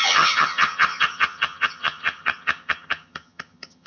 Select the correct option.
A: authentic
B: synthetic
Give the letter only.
B